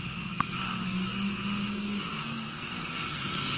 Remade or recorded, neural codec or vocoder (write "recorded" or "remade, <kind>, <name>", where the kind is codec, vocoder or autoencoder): remade, codec, SNAC